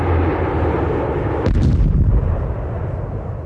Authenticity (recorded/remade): recorded